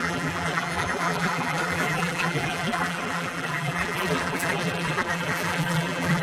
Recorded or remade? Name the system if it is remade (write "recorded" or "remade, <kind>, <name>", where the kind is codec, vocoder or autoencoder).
remade, vocoder, BigVGAN v2